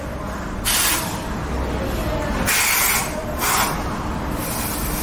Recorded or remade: recorded